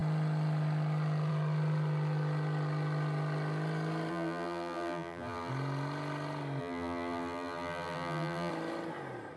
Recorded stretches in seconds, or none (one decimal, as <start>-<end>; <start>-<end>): 0.0-4.1; 5.5-6.6; 8.5-9.4